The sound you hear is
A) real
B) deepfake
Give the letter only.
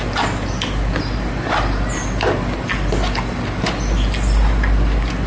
A